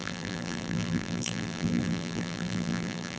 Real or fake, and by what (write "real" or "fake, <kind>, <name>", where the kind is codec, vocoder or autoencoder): fake, vocoder, BigVGAN v2